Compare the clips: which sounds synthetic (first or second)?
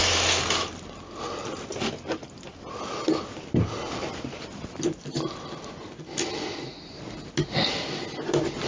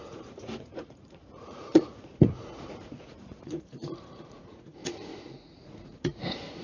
second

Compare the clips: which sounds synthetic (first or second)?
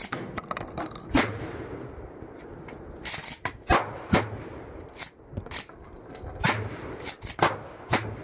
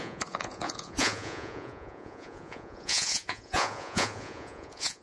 second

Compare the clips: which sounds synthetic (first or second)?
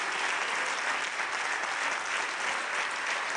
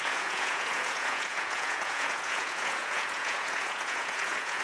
second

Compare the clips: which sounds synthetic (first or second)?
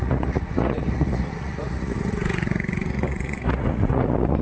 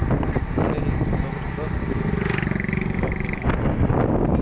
first